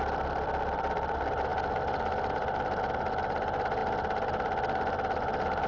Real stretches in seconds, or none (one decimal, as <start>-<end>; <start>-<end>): 0.0-5.7